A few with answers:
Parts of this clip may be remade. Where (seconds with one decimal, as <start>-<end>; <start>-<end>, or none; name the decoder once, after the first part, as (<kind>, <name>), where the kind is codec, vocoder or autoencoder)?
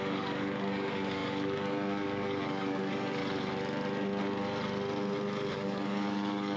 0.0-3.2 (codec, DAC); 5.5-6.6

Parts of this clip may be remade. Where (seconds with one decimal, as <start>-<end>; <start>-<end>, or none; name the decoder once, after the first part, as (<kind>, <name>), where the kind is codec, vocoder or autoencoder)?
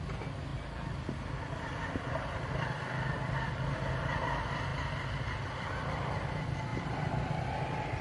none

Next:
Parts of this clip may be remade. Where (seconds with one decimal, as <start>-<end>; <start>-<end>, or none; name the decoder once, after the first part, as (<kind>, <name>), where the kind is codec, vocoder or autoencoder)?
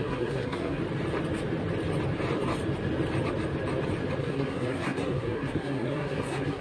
0.0-0.8 (codec, SNAC); 4.2-6.6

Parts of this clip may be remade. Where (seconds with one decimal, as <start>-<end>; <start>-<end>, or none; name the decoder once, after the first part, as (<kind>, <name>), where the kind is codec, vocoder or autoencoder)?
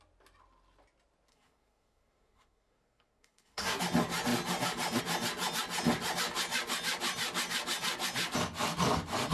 1.3-3.8 (codec, SNAC)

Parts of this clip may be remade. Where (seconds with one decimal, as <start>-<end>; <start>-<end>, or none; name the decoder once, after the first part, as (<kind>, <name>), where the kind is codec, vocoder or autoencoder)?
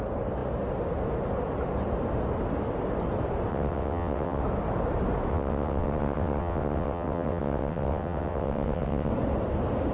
3.5-4.4 (vocoder, WaveNeXt); 5.3-9.1